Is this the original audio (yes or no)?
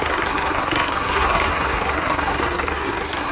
no